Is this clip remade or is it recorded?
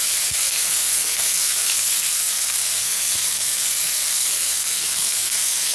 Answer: remade